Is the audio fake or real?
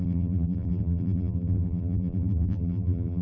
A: fake